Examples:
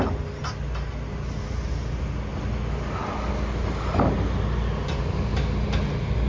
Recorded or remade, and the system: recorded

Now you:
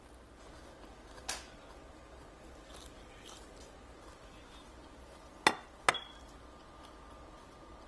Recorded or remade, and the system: recorded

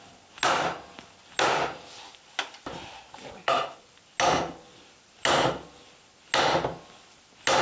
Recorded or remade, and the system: recorded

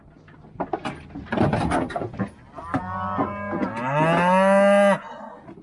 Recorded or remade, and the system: recorded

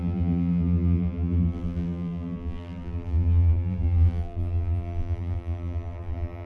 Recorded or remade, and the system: remade, vocoder, BigVGAN v2